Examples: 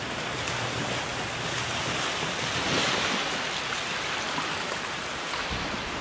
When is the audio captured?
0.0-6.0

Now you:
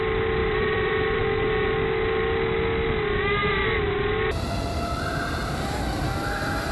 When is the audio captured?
0.0-0.4; 1.2-5.4

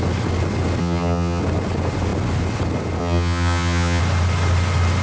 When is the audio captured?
0.0-0.8; 1.4-3.0; 4.0-5.0

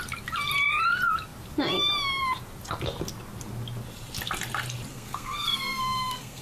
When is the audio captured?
0.0-4.9